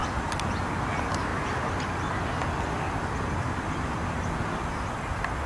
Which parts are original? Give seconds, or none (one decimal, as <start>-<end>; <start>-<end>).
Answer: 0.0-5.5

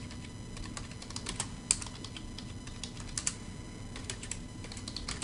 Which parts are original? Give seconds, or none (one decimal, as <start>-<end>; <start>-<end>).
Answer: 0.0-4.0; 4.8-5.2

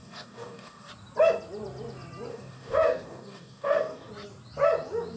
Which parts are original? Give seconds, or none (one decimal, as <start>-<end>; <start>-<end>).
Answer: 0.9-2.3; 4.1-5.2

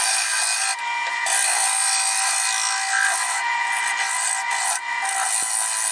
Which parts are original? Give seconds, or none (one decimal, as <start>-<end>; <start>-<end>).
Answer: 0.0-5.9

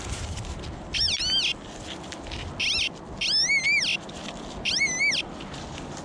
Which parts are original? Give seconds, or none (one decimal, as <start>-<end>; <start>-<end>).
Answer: 0.0-6.0

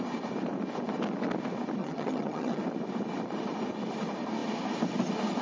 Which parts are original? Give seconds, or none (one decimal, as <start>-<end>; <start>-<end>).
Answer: 0.0-1.8; 2.6-5.4